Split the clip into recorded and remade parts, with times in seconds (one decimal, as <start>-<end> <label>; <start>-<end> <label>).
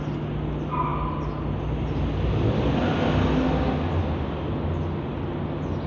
0.0-5.9 recorded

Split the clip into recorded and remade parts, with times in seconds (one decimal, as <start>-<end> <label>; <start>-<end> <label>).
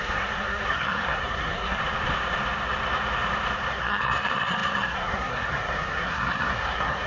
0.0-1.8 remade; 1.8-3.7 recorded; 3.7-7.1 remade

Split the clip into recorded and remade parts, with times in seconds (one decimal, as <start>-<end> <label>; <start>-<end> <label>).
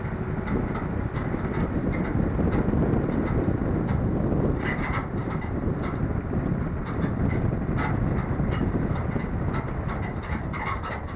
0.0-5.2 recorded; 5.2-6.1 remade; 6.1-11.2 recorded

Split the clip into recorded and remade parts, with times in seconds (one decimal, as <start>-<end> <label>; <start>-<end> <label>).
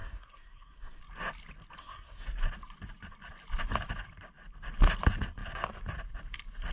0.0-1.0 remade; 1.0-1.8 recorded; 1.8-2.4 remade; 2.4-6.7 recorded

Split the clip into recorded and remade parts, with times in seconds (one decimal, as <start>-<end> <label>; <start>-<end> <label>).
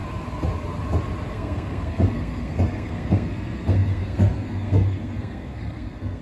0.0-1.3 recorded; 1.3-6.2 remade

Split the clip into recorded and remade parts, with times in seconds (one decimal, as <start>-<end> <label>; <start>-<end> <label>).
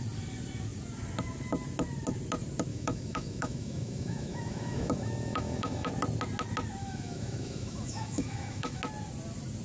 0.0-2.7 recorded; 2.7-5.9 remade; 5.9-6.8 recorded; 6.8-8.8 remade; 8.8-9.6 recorded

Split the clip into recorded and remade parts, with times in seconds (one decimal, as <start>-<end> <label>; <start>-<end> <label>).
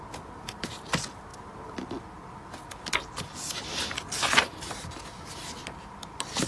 0.0-6.5 recorded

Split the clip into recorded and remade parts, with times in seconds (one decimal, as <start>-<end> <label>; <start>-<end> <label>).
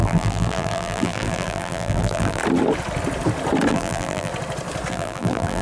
0.0-2.4 remade; 2.4-3.7 recorded; 3.7-4.3 remade; 4.3-4.9 recorded; 4.9-5.6 remade